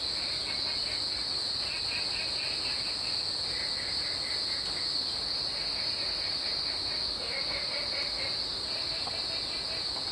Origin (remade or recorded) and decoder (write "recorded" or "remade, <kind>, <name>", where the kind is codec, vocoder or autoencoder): recorded